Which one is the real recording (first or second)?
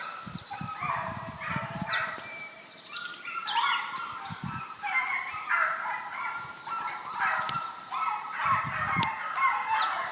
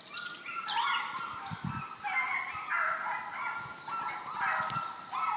second